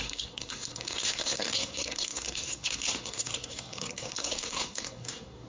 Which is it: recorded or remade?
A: remade